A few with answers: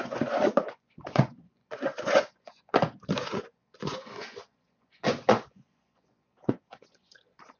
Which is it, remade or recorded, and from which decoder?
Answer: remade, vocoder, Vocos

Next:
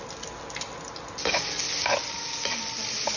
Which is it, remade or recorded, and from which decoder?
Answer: recorded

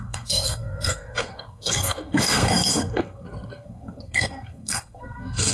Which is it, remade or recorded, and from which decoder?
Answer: remade, codec, SNAC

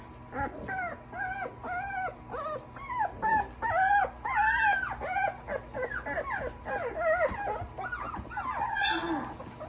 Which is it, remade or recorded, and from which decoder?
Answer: recorded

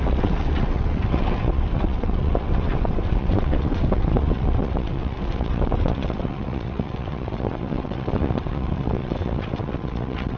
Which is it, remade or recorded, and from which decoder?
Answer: remade, vocoder, WaveNeXt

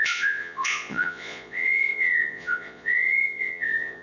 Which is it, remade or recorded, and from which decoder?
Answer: remade, vocoder, Vocos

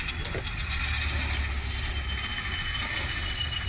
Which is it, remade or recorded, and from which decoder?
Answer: recorded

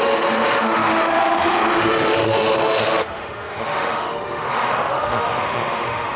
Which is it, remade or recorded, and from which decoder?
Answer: remade, autoencoder, DAC-VAE